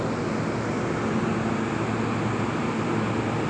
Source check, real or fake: real